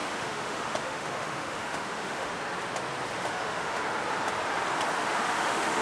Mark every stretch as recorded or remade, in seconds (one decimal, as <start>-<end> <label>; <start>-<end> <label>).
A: 0.0-2.3 remade; 2.3-3.3 recorded; 3.3-3.8 remade; 3.8-5.0 recorded; 5.0-5.8 remade